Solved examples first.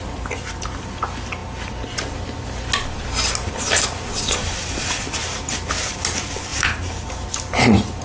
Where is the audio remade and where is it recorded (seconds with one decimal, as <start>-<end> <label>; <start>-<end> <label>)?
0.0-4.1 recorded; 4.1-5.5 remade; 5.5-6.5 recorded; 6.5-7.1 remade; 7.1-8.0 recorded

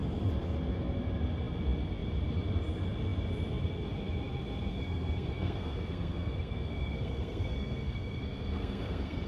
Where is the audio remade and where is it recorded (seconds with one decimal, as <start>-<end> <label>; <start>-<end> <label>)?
0.0-4.7 recorded; 4.7-9.3 remade

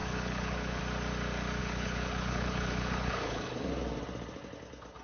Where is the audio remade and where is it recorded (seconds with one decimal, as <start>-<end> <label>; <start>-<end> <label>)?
0.0-0.8 remade; 0.8-1.6 recorded; 1.6-3.7 remade; 3.7-5.0 recorded